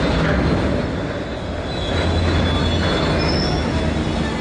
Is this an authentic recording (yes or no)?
yes